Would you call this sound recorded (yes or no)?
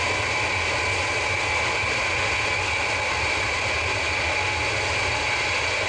yes